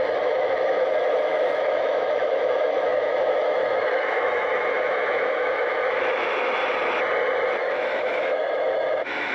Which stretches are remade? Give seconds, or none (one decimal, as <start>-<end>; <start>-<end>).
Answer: 0.0-6.6; 7.6-9.3